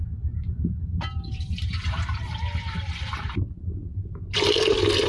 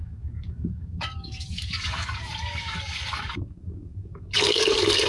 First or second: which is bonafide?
first